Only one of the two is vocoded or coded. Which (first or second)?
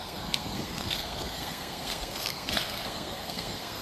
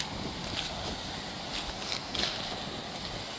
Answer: first